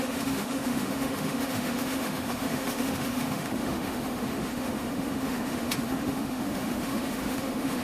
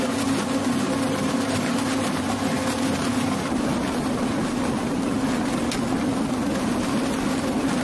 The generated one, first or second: first